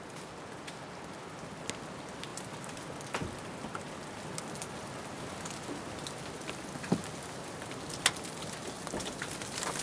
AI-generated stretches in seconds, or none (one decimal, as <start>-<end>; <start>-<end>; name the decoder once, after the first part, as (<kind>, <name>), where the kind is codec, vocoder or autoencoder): none